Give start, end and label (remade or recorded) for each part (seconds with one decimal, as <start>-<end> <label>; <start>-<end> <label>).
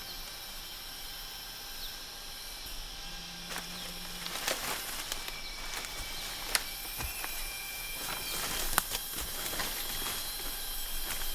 0.0-7.4 recorded; 7.4-8.1 remade; 8.1-11.3 recorded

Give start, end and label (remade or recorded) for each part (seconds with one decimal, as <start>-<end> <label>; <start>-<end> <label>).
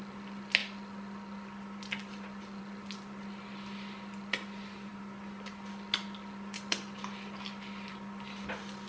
0.0-8.9 recorded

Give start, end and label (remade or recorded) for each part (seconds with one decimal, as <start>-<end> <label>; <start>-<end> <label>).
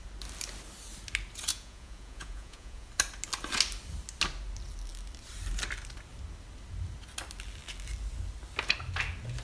0.0-1.5 recorded; 1.5-2.9 remade; 2.9-9.4 recorded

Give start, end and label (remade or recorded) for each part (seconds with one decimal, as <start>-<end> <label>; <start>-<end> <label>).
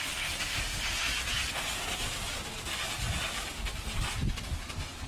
0.0-5.1 recorded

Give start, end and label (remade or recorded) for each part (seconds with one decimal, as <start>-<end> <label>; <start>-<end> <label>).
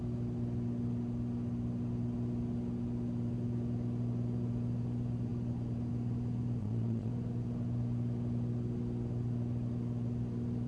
0.0-6.6 recorded; 6.6-7.1 remade; 7.1-10.7 recorded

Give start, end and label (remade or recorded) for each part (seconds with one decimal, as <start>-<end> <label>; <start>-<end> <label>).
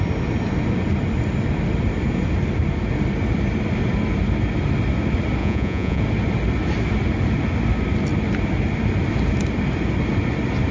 0.0-5.4 recorded; 5.4-6.0 remade; 6.0-10.7 recorded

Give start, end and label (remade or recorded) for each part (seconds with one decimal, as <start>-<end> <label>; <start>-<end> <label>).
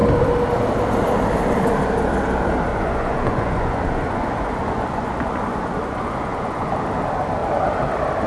0.0-2.7 recorded; 2.7-6.7 remade; 6.7-8.3 recorded